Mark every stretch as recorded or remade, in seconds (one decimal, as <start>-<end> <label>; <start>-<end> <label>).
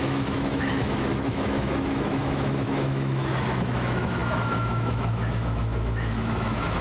0.0-6.8 remade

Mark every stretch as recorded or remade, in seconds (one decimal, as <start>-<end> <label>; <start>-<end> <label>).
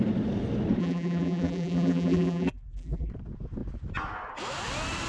0.0-0.8 recorded; 0.8-3.1 remade; 3.1-5.1 recorded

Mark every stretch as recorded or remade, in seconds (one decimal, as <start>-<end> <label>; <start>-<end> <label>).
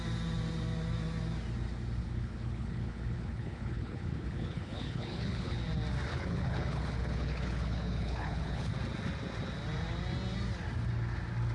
0.0-2.0 recorded; 2.0-5.6 remade; 5.6-6.1 recorded; 6.1-8.7 remade; 8.7-11.5 recorded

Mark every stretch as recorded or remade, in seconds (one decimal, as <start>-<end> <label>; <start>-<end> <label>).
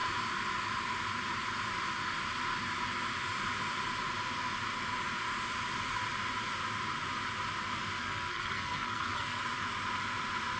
0.0-8.0 recorded; 8.0-9.4 remade; 9.4-10.6 recorded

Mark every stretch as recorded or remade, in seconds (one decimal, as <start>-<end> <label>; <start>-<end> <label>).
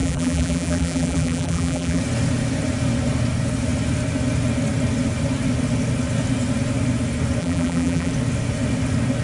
0.0-2.0 remade; 2.0-7.4 recorded; 7.4-8.1 remade; 8.1-9.2 recorded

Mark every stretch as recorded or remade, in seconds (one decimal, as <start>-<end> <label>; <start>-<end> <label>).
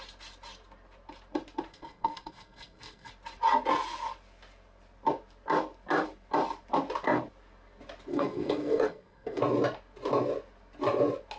0.0-1.7 recorded; 1.7-3.1 remade; 3.1-8.1 recorded; 8.1-9.4 remade; 9.4-11.4 recorded